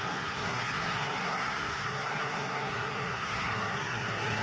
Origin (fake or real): fake